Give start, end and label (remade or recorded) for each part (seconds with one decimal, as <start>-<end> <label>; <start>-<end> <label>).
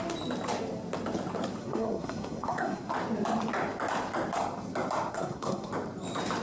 0.0-1.6 recorded; 1.6-2.9 remade; 2.9-5.1 recorded; 5.1-5.7 remade; 5.7-6.4 recorded